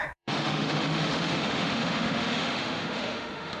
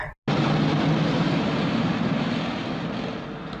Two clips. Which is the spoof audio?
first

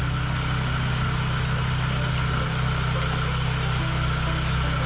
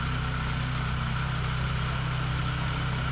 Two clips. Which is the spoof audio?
second